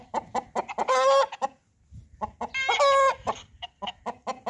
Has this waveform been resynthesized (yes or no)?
no